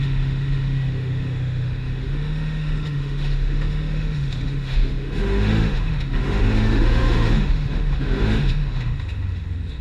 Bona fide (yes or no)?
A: no